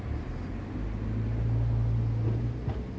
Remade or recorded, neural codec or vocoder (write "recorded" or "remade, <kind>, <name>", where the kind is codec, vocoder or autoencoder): recorded